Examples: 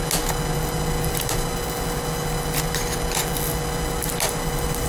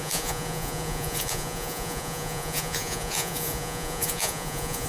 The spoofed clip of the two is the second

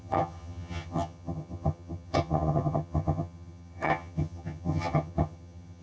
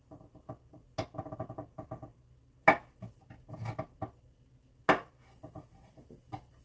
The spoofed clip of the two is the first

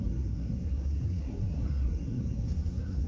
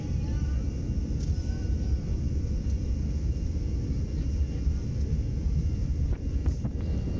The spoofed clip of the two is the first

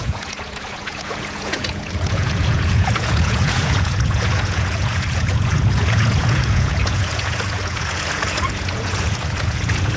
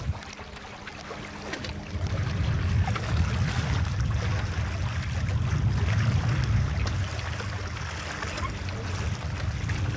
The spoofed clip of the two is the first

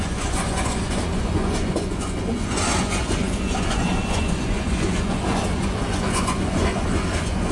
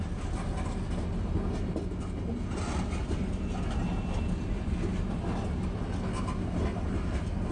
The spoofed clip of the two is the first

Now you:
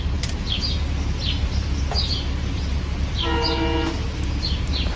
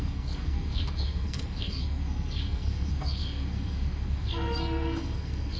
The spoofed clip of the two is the second